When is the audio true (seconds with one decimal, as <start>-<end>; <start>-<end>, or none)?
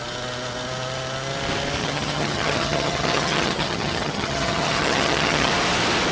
0.0-1.8; 5.5-6.1